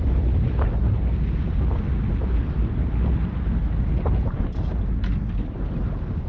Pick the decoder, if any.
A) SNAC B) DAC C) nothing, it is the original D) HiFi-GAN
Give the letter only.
C